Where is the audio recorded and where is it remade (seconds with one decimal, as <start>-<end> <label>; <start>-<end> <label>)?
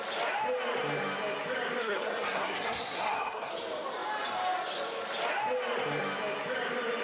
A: 0.0-1.8 recorded; 1.8-3.5 remade; 3.5-7.0 recorded